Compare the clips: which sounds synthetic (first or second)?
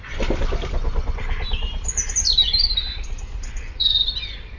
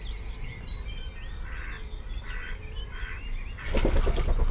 first